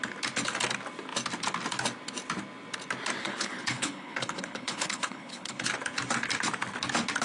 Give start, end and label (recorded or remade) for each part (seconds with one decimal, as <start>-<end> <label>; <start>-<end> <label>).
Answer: 0.0-3.2 recorded; 3.2-5.7 remade; 5.7-7.2 recorded